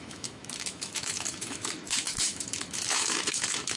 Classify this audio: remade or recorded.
remade